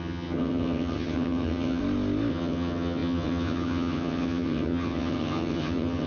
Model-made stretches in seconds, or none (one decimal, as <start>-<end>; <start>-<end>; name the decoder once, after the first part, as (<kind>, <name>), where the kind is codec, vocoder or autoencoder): 0.0-1.8 (vocoder, HiFi-GAN); 2.3-6.1